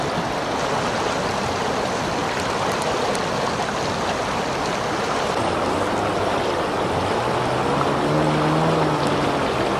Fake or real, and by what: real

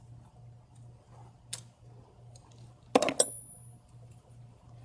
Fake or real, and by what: real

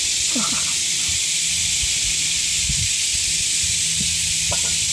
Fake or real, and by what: real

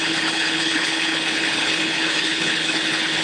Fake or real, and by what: fake, codec, HILCodec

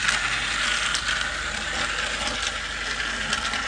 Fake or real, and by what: real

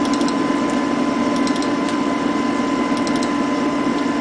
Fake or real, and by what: real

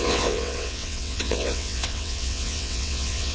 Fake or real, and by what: fake, vocoder, WaveNeXt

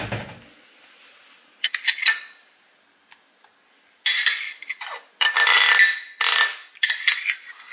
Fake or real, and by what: real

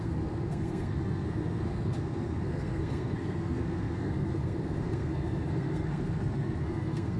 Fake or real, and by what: fake, codec, SNAC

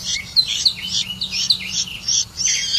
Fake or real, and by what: real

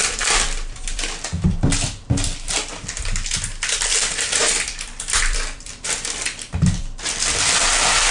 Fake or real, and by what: fake, vocoder, BigVGAN v2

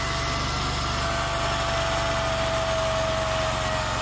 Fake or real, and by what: real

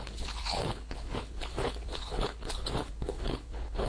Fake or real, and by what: fake, codec, HILCodec